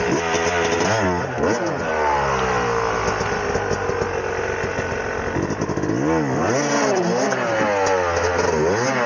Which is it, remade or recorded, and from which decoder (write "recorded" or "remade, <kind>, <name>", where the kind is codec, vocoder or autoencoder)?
recorded